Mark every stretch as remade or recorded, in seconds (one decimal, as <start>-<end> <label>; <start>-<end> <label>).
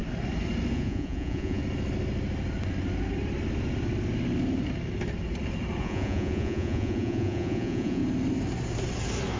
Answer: 0.0-0.7 recorded; 0.7-1.6 remade; 1.6-5.8 recorded; 5.8-8.0 remade; 8.0-9.4 recorded